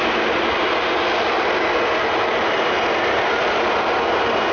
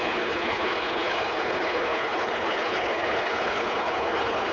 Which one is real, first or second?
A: first